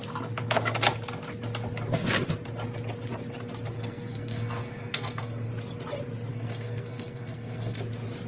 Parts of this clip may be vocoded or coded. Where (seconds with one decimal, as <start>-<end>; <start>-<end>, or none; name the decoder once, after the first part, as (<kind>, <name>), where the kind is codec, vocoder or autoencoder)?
3.7-5.5 (codec, SNAC); 6.3-7.8